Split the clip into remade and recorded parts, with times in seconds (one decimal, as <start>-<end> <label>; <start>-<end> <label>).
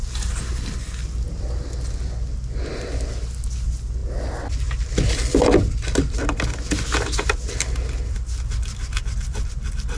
0.0-10.0 recorded